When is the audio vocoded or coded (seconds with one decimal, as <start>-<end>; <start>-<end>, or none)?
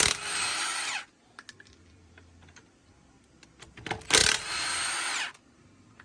0.7-3.3; 4.2-5.1